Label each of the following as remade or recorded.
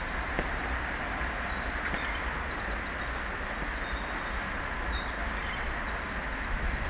recorded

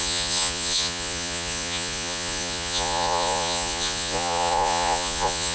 remade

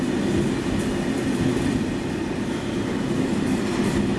recorded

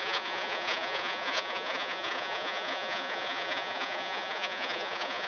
remade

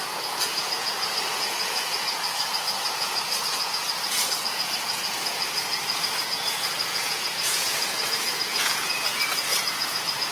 remade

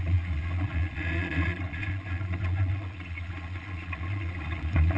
remade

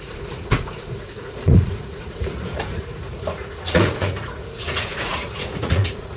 remade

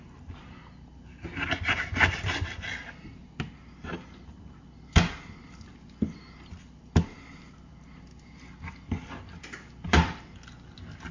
recorded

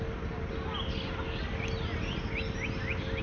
recorded